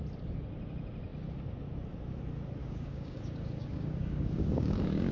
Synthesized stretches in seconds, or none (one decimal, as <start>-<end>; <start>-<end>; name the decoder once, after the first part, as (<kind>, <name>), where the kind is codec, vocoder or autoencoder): 2.6-5.1 (codec, DAC)